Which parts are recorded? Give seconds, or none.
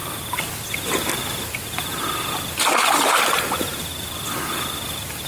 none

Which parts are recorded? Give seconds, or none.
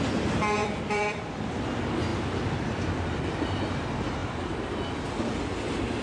0.0-0.6; 1.5-6.0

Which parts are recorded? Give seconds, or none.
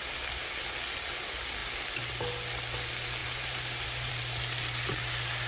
0.0-3.2; 4.1-5.5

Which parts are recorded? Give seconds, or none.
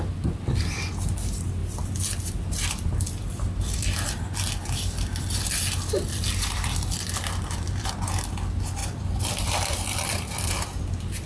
0.0-1.6; 5.5-6.1; 7.9-8.8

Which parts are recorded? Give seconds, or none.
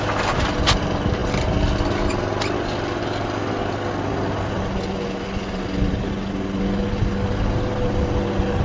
0.0-8.6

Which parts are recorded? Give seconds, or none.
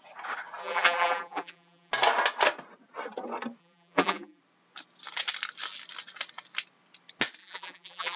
0.0-0.6; 1.9-3.6; 4.4-7.4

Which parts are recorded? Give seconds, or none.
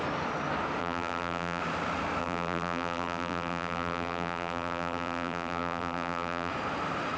0.0-0.8; 1.6-2.2; 6.5-7.2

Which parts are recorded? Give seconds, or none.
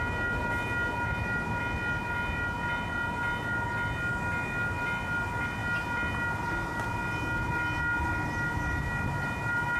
0.0-9.8